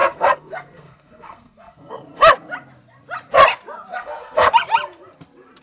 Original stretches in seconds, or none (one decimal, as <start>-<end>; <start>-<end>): 1.9-3.9; 4.5-5.6